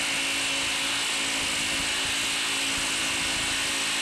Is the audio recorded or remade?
recorded